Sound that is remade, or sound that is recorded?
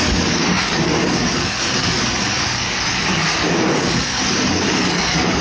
remade